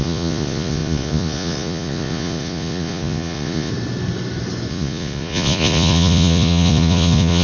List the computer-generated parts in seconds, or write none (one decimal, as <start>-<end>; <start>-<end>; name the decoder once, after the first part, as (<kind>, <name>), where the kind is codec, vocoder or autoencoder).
0.0-3.7 (vocoder, Vocos); 4.7-7.4